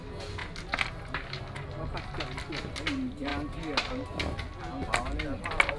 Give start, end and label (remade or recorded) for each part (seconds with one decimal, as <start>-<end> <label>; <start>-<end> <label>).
0.0-5.8 recorded